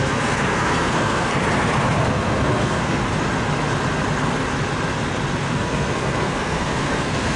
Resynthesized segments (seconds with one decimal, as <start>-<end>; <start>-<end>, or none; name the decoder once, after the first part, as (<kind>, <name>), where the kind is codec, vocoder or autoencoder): 0.0-1.3 (codec, SNAC); 2.1-3.0; 5.5-7.4